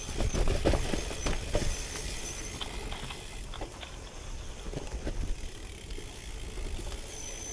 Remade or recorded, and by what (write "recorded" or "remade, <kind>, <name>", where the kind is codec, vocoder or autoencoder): recorded